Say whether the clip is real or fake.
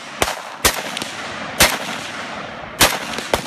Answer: real